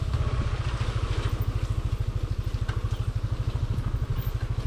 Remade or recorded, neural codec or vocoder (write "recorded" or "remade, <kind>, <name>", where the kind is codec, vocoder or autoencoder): recorded